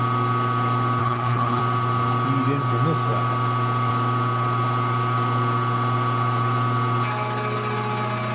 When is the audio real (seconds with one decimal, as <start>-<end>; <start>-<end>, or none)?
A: 0.0-1.0; 1.6-8.3